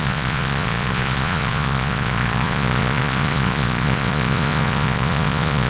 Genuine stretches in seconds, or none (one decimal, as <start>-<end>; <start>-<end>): none